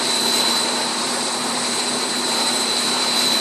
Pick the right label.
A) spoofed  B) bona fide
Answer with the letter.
A